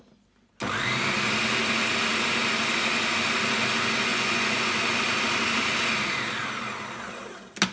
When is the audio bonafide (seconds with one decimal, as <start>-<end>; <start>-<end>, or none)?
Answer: 0.0-4.1; 4.7-7.7